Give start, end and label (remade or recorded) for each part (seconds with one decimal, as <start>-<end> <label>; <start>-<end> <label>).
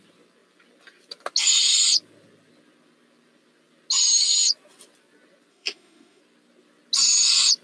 0.0-5.5 recorded; 5.5-6.2 remade; 6.2-7.6 recorded